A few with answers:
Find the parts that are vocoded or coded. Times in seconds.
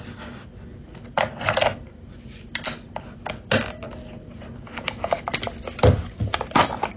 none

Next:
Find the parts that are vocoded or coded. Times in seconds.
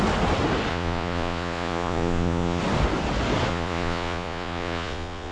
0.7-2.6; 3.5-5.3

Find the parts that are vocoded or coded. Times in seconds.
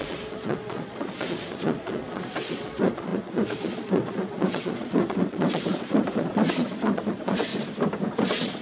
0.0-7.5; 8.1-8.6